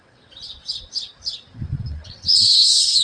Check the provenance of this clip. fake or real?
fake